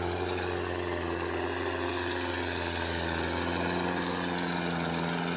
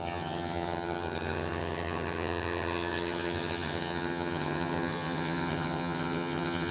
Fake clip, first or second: second